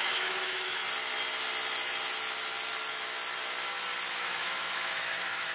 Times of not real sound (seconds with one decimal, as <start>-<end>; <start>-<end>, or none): 0.0-0.8; 4.1-5.5